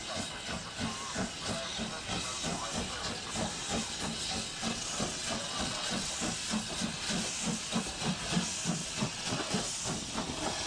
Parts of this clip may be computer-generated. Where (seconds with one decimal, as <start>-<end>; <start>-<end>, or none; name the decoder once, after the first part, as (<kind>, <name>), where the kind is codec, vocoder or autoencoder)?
4.5-6.1 (vocoder, WaveNeXt); 8.8-9.5